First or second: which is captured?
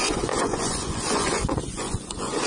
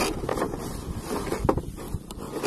second